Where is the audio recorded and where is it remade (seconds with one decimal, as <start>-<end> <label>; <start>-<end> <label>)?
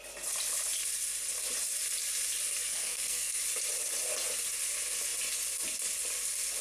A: 0.0-2.6 recorded; 2.6-3.4 remade; 3.4-6.6 recorded